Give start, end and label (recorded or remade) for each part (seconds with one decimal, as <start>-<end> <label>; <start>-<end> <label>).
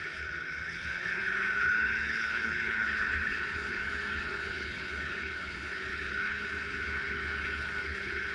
0.0-8.3 remade